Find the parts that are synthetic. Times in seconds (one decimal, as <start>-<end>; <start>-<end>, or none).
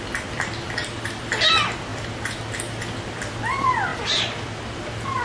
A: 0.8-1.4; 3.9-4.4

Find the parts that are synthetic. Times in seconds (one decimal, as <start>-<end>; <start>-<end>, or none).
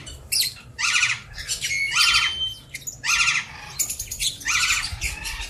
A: none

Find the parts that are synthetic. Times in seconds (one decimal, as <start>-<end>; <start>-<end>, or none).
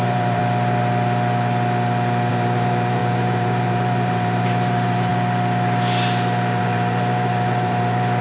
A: 0.0-0.4; 2.3-5.1; 6.6-8.2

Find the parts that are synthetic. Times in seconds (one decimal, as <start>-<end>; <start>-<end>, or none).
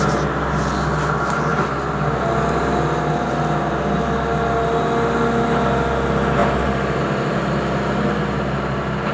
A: 6.4-7.0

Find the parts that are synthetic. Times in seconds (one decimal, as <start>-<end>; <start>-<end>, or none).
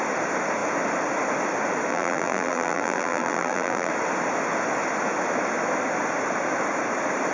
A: 1.9-3.9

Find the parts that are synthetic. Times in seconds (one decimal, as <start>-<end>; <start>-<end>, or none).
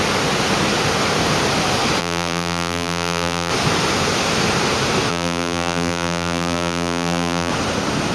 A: 2.0-3.5; 5.1-7.5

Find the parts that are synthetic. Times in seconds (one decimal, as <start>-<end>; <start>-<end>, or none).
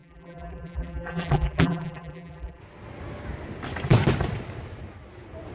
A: 0.0-2.6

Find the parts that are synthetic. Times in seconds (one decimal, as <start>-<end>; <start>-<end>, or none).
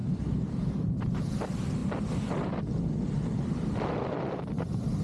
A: 0.0-1.1